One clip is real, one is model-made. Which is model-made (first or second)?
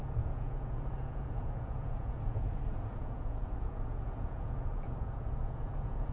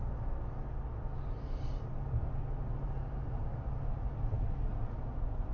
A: first